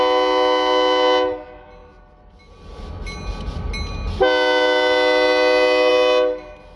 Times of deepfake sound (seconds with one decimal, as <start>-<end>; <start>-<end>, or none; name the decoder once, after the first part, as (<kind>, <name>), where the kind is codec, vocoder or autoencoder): none